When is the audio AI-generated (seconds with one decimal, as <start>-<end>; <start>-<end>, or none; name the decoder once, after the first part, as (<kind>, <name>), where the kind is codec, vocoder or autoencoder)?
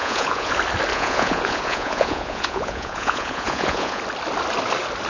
0.0-0.5 (vocoder, Vocos); 0.9-4.0